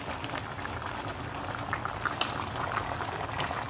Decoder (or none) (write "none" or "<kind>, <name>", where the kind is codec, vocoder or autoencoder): none